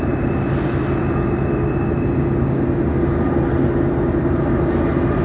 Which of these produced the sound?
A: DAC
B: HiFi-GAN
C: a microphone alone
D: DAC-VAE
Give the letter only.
C